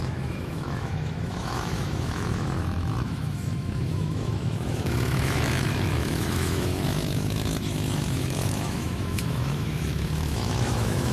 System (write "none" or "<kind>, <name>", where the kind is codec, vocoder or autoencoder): autoencoder, DAC-VAE